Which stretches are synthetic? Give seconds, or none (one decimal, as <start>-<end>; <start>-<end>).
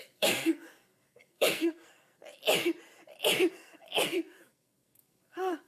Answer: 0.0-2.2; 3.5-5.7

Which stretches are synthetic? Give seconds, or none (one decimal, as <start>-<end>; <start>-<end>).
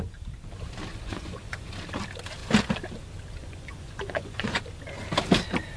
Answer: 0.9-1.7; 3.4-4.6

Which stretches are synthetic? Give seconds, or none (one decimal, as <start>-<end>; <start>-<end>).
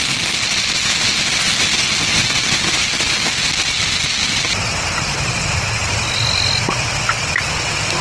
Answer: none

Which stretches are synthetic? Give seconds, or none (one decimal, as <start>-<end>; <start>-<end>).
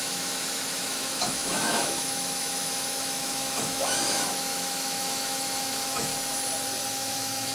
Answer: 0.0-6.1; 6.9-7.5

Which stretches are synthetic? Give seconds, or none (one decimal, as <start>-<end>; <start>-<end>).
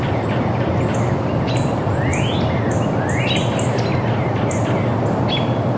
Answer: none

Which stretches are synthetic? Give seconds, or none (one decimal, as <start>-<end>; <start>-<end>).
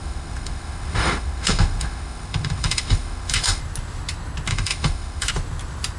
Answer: 0.0-3.6; 4.5-5.3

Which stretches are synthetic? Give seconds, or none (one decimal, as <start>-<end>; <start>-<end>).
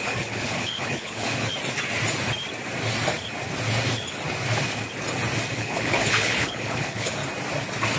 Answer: 0.0-1.5; 5.5-7.2